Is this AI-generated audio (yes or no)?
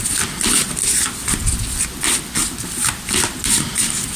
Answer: no